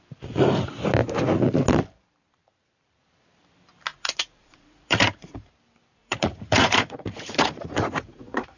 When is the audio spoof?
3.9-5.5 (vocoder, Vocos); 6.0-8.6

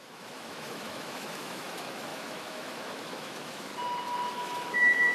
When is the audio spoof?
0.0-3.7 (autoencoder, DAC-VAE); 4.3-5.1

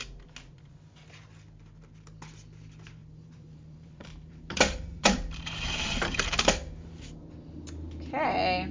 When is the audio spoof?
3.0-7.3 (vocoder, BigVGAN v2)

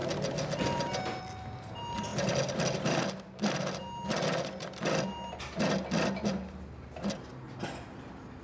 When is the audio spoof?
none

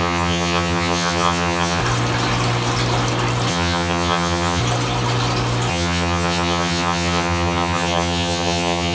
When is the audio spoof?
0.0-1.8 (vocoder, HiFi-GAN); 3.5-4.6; 5.7-8.9